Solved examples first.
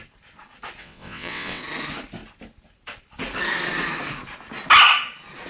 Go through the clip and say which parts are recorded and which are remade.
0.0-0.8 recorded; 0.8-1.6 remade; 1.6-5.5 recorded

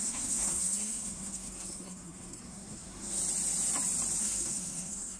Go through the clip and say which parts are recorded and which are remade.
0.0-3.2 remade; 3.2-4.2 recorded; 4.2-5.2 remade